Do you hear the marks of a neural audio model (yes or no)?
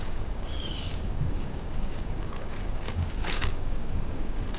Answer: yes